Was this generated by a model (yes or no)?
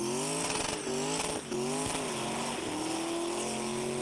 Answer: no